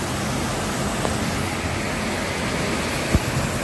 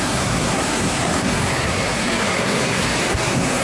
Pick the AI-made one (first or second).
second